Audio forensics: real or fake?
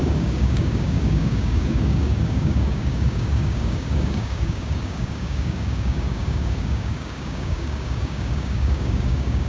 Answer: fake